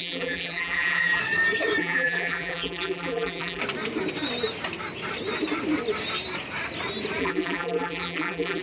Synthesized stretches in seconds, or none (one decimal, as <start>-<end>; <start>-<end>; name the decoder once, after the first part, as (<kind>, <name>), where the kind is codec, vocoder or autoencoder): 0.0-1.2 (vocoder, BigVGAN v2); 1.8-3.6; 7.2-8.6

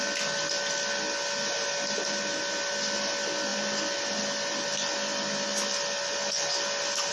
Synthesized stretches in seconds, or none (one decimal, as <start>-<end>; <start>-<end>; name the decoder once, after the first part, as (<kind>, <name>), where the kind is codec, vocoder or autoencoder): none

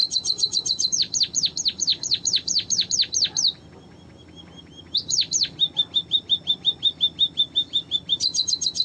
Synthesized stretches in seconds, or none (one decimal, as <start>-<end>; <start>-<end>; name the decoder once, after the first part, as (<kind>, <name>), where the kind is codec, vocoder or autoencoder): 0.0-1.2 (vocoder, BigVGAN v2); 1.9-2.9

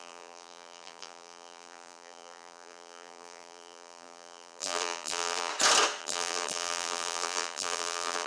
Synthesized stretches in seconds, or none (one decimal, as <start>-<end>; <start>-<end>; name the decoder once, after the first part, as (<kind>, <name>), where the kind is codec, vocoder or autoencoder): 0.0-5.5 (vocoder, BigVGAN v2); 6.0-8.3

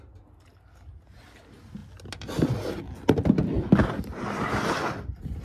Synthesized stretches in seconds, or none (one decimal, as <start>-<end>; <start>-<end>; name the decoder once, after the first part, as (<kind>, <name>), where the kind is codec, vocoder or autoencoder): none

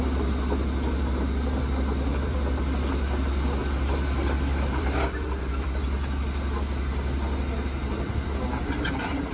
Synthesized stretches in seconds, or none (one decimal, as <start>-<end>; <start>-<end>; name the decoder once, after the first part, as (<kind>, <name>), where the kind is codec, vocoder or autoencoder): 2.1-2.6 (vocoder, BigVGAN v2); 3.6-5.8